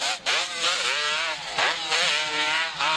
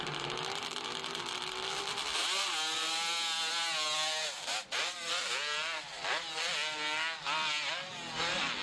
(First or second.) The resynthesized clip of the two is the first